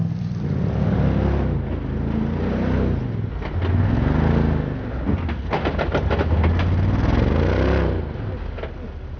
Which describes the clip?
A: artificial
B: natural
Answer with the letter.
B